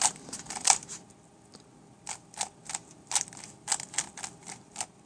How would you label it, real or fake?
real